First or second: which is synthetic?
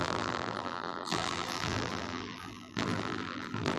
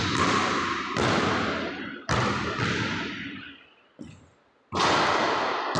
first